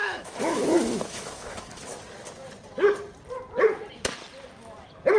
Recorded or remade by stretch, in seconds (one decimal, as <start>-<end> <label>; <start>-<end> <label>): 0.0-1.9 remade; 1.9-5.2 recorded